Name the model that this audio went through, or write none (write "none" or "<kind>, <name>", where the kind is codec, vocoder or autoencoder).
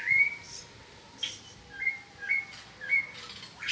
none